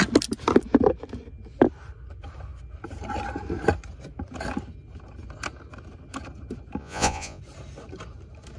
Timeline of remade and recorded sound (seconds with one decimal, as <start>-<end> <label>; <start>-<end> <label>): 0.0-6.8 recorded; 6.8-7.4 remade; 7.4-8.6 recorded